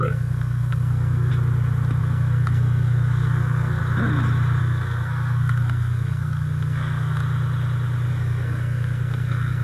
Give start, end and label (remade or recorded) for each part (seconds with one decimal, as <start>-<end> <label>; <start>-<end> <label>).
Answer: 0.0-1.3 remade; 1.3-2.0 recorded; 2.0-3.8 remade; 3.8-4.6 recorded; 4.6-7.2 remade; 7.2-8.1 recorded; 8.1-9.6 remade